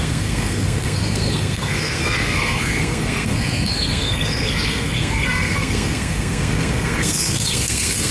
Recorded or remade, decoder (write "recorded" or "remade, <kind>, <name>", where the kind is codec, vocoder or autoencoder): remade, codec, SNAC